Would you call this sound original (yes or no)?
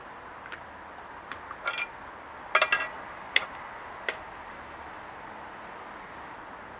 yes